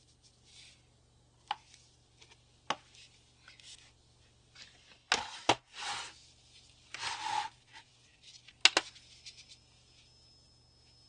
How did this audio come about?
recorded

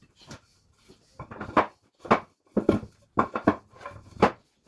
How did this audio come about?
recorded